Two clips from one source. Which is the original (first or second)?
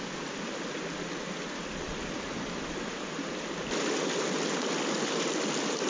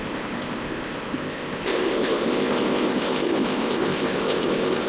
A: first